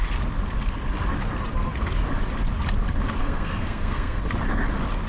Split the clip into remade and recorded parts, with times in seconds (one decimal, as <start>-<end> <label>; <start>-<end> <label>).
0.0-3.2 recorded; 3.2-4.2 remade; 4.2-5.1 recorded